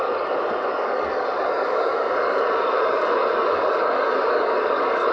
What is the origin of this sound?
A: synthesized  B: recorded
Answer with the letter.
A